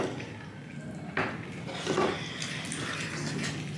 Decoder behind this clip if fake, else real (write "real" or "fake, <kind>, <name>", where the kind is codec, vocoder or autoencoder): real